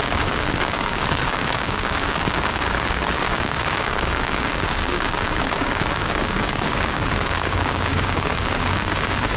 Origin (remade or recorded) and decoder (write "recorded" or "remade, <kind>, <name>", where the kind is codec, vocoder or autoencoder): remade, codec, DAC